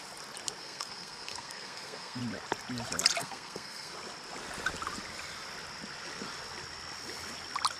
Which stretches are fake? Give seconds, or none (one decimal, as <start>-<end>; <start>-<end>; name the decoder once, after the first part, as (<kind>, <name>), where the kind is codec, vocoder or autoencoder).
0.6-2.2 (codec, SNAC); 3.2-3.9